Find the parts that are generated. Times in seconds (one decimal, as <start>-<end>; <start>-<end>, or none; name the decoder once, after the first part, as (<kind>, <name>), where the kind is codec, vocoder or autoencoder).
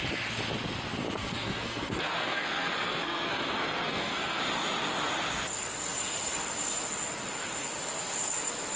1.2-4.4 (codec, SNAC)